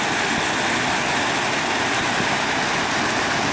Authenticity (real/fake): real